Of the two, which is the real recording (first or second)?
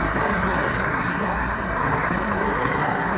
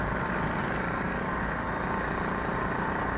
second